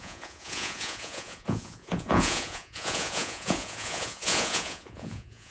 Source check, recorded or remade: remade